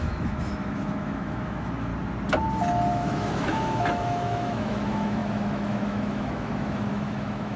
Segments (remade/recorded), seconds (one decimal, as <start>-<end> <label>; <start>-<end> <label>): 0.0-1.9 remade; 1.9-2.9 recorded; 2.9-7.6 remade